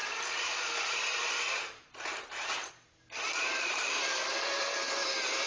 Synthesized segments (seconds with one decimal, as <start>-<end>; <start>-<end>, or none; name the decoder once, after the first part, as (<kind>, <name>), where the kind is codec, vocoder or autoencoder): 0.0-2.7 (vocoder, BigVGAN v2); 3.5-4.6